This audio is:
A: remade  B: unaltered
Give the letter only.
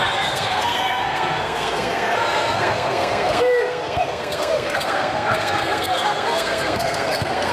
A